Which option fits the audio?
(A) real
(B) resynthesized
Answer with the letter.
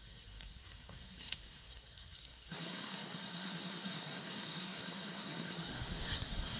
B